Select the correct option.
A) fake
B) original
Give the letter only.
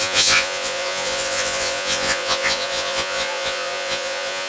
A